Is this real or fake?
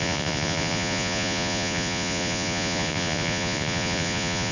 fake